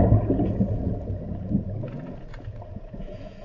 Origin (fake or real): fake